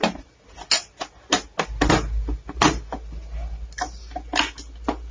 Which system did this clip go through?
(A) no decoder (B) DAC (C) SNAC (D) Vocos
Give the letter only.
A